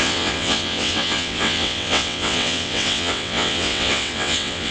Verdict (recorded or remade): remade